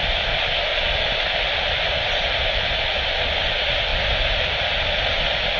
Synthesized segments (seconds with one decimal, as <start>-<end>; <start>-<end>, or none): none